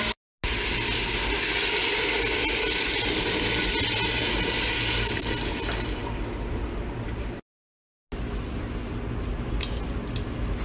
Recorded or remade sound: recorded